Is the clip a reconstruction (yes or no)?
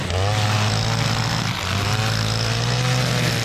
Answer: no